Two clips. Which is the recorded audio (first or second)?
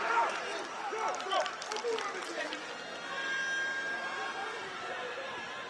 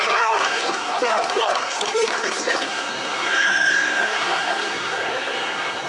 first